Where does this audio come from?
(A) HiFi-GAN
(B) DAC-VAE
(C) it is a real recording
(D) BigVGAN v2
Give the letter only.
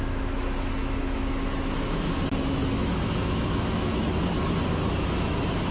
B